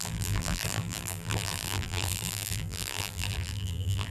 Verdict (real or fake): fake